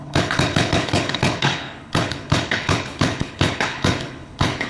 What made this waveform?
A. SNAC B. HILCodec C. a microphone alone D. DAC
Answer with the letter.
B